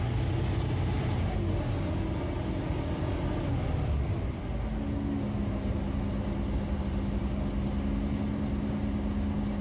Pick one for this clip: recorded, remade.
recorded